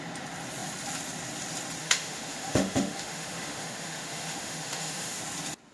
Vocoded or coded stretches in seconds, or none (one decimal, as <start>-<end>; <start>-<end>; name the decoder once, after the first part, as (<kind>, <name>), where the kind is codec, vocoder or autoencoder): 1.8-5.2 (autoencoder, DAC-VAE)